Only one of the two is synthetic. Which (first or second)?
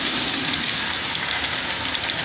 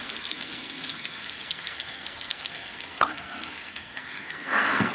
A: second